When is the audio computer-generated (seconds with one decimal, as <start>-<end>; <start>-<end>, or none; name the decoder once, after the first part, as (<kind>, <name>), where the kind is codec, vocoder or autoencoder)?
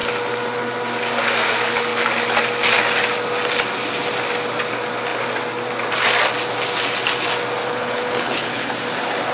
7.7-8.7 (codec, HILCodec)